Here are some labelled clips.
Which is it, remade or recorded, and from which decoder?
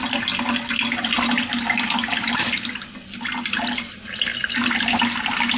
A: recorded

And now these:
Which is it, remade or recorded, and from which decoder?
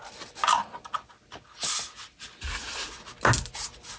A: recorded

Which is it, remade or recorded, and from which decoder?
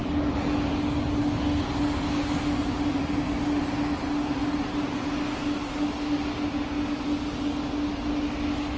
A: recorded